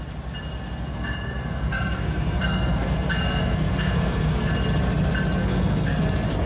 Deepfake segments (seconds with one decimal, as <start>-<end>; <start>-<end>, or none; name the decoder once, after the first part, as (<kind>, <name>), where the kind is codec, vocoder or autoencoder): 0.9-4.5 (codec, SNAC); 5.4-6.0